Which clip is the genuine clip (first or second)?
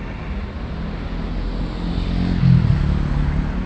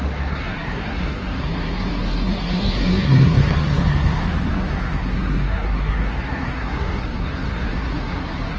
first